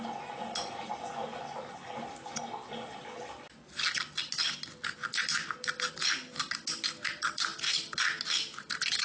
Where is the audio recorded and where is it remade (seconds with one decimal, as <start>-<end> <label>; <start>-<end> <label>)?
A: 0.0-9.0 recorded